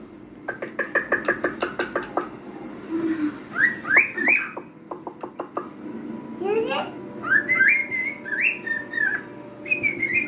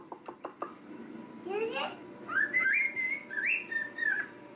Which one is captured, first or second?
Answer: first